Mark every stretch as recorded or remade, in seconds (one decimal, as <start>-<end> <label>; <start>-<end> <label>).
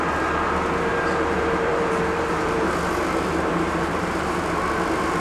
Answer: 0.0-0.9 recorded; 0.9-2.7 remade; 2.7-3.5 recorded; 3.5-4.4 remade; 4.4-5.2 recorded